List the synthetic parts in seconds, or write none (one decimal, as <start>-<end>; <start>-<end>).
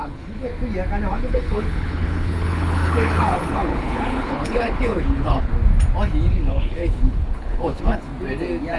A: 0.0-0.5; 1.1-5.5; 6.3-8.1